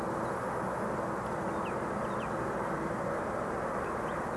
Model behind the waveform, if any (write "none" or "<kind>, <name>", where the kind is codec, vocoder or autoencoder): none